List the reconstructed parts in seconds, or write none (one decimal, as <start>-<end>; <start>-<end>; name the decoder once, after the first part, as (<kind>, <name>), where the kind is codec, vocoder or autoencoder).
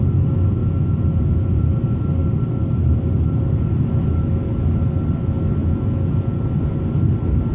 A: 0.6-1.6 (vocoder, Vocos); 5.6-6.4